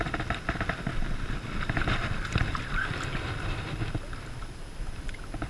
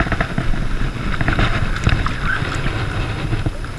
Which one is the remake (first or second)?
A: first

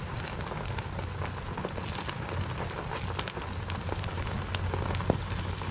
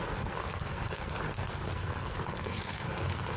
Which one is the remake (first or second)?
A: second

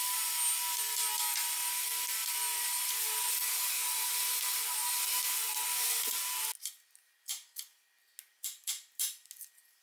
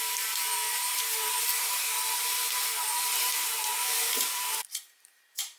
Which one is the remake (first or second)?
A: second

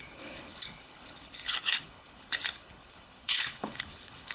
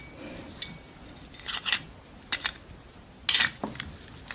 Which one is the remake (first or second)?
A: first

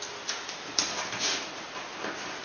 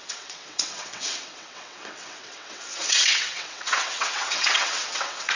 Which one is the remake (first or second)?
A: second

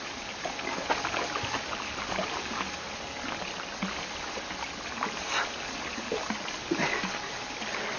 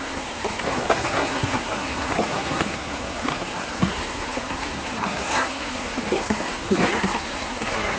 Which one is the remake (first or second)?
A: second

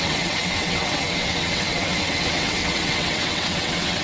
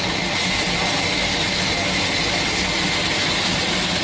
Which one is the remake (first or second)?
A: first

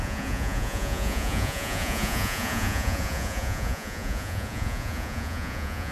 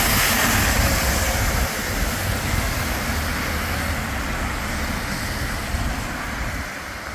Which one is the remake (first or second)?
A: first